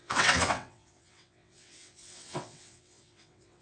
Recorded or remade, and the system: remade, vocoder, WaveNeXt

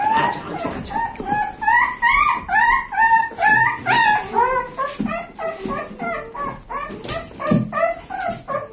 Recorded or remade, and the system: recorded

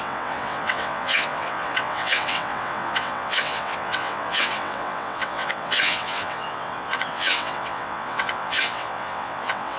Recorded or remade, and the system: remade, vocoder, WaveNeXt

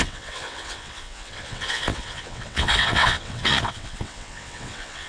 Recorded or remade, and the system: remade, vocoder, WaveNeXt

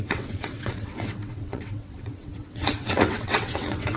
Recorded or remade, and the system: remade, vocoder, WaveNeXt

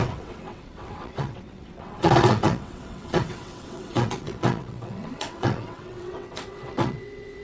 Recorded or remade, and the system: remade, vocoder, WaveNeXt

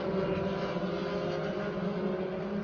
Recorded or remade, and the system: recorded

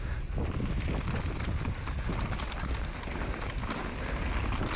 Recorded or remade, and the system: recorded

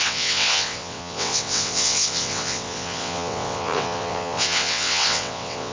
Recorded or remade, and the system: remade, vocoder, WaveNeXt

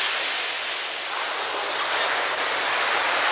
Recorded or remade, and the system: recorded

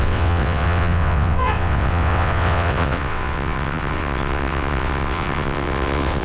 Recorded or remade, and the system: remade, vocoder, WaveNeXt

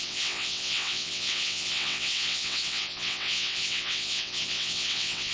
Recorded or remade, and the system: remade, vocoder, WaveNeXt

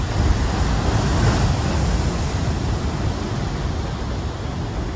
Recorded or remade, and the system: recorded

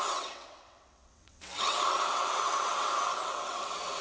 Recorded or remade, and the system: remade, vocoder, WaveNeXt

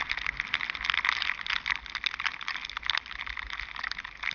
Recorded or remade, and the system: recorded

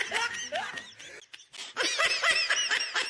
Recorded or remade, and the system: recorded